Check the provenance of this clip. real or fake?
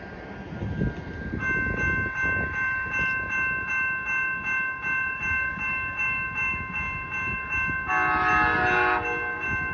real